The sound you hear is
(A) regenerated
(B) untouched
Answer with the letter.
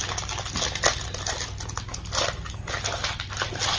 B